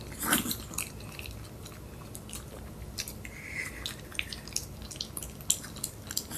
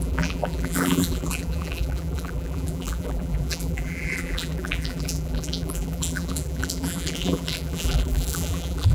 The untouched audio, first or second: first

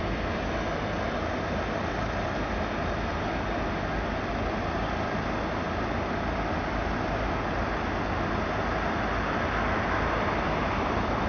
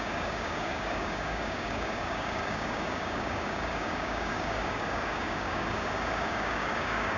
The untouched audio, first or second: first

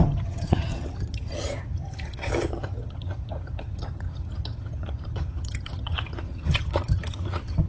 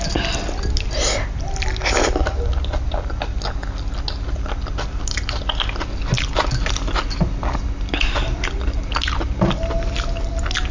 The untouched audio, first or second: second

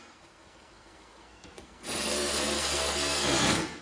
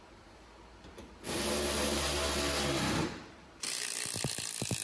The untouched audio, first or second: second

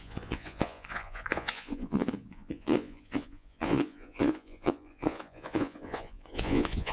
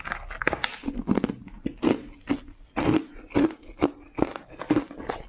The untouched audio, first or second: second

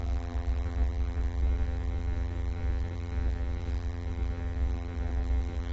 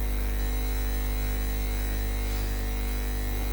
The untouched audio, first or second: second